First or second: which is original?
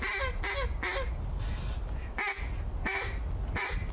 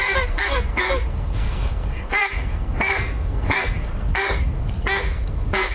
first